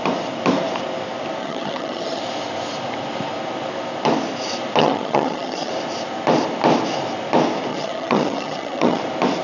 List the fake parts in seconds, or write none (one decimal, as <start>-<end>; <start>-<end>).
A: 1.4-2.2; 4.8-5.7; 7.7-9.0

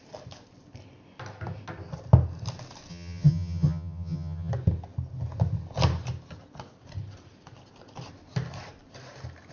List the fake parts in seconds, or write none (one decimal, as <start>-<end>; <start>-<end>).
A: 2.9-4.5

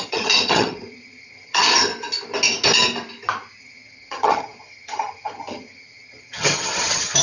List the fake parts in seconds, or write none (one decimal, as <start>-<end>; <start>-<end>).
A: 0.0-1.9; 3.6-7.2

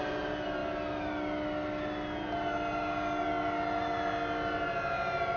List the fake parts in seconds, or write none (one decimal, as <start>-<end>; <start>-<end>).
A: none

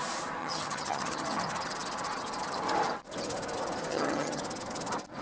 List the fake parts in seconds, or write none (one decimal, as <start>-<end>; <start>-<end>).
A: 0.4-1.4; 3.9-4.4